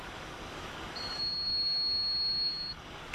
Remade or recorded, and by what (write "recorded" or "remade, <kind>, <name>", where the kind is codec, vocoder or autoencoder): remade, codec, DAC